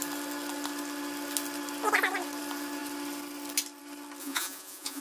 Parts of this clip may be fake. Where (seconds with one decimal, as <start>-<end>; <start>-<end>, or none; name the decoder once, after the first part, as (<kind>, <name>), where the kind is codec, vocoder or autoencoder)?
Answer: 4.2-5.0 (vocoder, Vocos)